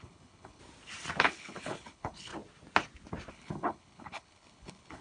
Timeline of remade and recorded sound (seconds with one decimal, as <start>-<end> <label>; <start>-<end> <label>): 0.0-0.6 remade; 0.6-1.2 recorded; 1.2-2.3 remade; 2.3-3.3 recorded; 3.3-5.0 remade